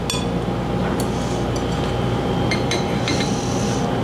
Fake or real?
real